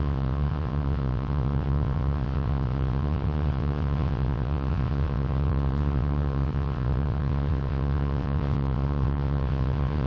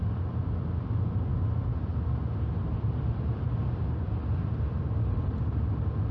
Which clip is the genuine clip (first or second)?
second